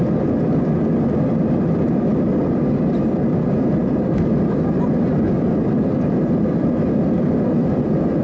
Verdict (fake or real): real